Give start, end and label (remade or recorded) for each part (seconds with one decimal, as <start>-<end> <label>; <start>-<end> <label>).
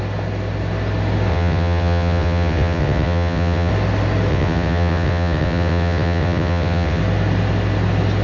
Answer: 0.0-1.3 recorded; 1.3-3.7 remade; 3.7-4.3 recorded; 4.3-7.0 remade; 7.0-8.2 recorded